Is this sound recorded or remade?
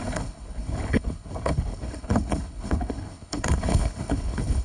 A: remade